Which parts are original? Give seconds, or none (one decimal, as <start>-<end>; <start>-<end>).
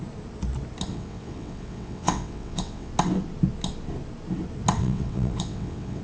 0.0-0.9; 2.9-4.8